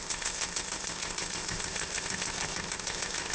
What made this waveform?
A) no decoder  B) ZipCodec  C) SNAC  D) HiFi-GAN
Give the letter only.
B